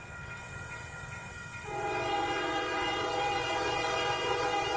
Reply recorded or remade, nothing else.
remade